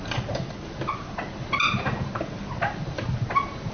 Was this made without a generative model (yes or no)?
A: yes